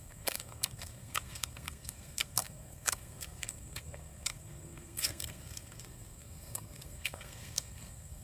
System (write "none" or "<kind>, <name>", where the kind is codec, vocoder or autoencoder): codec, SNAC